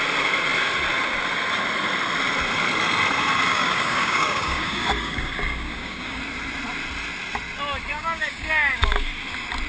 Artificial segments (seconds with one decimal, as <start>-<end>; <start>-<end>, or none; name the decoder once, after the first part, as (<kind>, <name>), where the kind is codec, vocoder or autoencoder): 3.5-6.2 (codec, DAC); 7.9-9.1